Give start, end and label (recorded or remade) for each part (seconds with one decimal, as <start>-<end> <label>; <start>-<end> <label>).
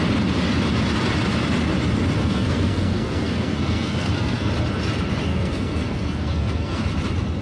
0.0-2.2 recorded; 2.2-4.5 remade; 4.5-5.3 recorded; 5.3-6.8 remade; 6.8-7.4 recorded